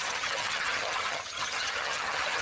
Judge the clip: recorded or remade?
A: remade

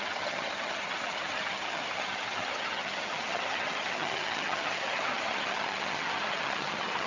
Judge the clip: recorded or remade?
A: remade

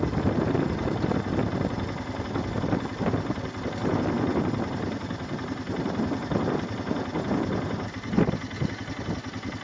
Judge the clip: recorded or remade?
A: recorded